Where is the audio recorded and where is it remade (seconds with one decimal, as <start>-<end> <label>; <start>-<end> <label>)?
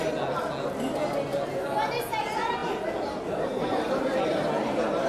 0.0-5.1 recorded